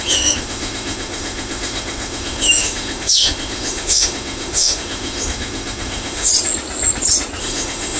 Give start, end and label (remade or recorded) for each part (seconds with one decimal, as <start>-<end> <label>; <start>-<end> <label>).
0.0-6.3 remade; 6.3-7.4 recorded; 7.4-8.0 remade